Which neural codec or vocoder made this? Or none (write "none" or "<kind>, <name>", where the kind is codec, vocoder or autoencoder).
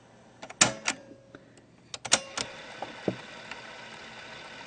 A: none